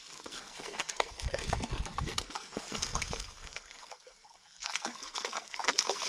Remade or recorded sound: remade